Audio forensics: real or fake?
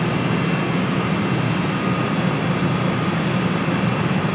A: real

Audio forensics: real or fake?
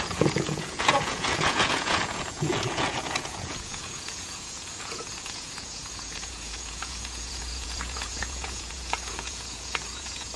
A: fake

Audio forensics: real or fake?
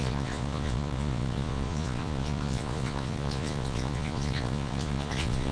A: fake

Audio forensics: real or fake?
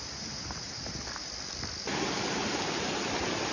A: real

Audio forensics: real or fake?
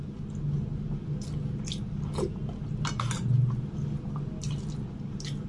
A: real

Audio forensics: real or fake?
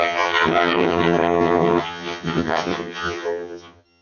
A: fake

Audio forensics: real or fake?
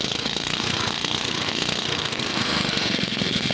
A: fake